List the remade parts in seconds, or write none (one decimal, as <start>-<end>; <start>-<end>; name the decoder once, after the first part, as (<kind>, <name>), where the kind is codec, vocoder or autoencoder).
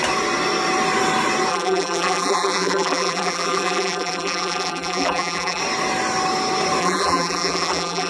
1.5-5.6 (vocoder, BigVGAN v2); 6.8-8.1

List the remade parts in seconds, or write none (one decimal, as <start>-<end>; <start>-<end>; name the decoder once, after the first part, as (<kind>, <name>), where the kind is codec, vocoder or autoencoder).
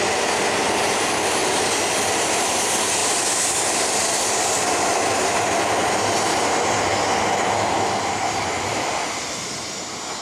3.0-5.9 (vocoder, BigVGAN v2)